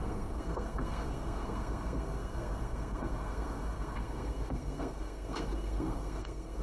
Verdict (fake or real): fake